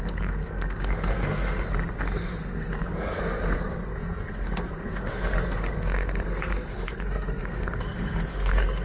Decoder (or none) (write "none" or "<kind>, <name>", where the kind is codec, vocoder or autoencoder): codec, SNAC